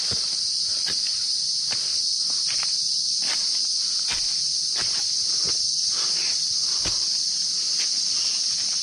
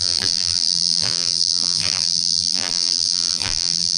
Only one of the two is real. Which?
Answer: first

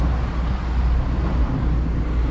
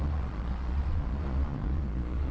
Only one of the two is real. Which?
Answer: first